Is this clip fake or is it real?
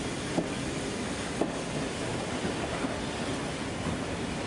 real